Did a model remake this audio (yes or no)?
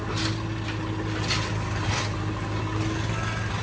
no